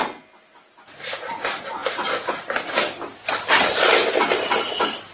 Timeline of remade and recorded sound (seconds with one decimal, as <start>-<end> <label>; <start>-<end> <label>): 0.0-5.1 recorded

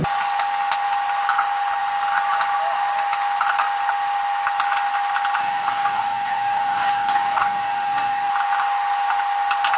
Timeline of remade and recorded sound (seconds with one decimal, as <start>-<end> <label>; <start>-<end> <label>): 0.0-5.4 recorded; 5.4-8.3 remade; 8.3-9.8 recorded

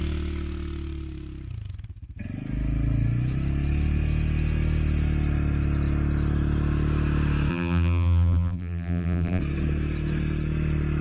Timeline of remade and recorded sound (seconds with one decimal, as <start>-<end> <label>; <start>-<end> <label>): 0.0-7.5 recorded; 7.5-9.4 remade; 9.4-11.0 recorded

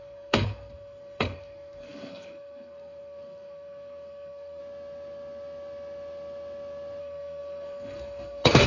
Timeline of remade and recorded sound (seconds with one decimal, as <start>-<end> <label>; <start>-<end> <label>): 0.0-4.6 remade; 4.6-7.0 recorded; 7.0-8.7 remade